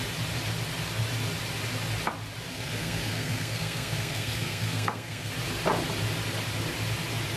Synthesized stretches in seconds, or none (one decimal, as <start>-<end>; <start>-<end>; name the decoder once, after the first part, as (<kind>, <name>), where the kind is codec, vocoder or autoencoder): 2.5-5.3 (codec, SNAC)